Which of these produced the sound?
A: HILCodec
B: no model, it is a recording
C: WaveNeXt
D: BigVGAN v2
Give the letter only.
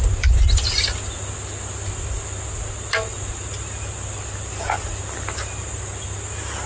B